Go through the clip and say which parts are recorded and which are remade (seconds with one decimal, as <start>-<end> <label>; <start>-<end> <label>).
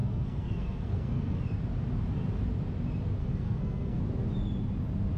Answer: 0.0-1.4 remade; 1.4-3.2 recorded; 3.2-4.0 remade; 4.0-5.2 recorded